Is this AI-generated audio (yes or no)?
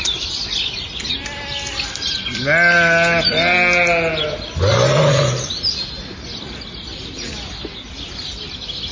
no